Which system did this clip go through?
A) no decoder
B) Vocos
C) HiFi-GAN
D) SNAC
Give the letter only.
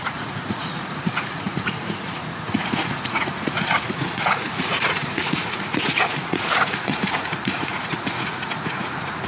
B